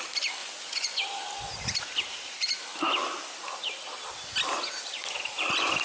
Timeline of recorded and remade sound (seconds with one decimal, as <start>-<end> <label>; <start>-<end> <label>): 0.0-0.4 recorded; 0.4-1.0 remade; 1.0-5.8 recorded